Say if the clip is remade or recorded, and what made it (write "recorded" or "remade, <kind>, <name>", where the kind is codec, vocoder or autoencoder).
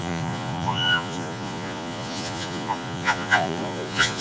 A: remade, vocoder, Vocos